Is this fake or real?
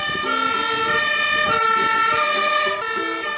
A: real